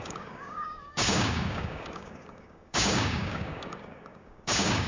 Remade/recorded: remade